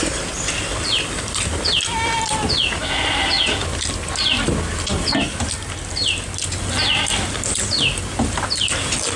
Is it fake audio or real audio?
real